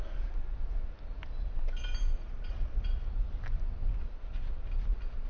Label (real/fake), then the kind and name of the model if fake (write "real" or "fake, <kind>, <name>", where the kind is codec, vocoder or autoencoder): real